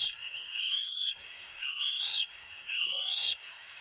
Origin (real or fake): fake